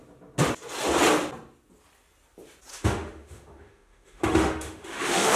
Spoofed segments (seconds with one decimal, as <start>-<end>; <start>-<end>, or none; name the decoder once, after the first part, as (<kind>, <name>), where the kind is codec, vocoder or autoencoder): 2.7-5.4 (autoencoder, DAC-VAE)